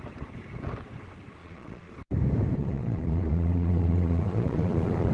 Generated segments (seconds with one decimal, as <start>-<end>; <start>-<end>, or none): 1.4-1.9; 2.6-5.1